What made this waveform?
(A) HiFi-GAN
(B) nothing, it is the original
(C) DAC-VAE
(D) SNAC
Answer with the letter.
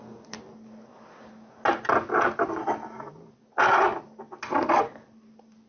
B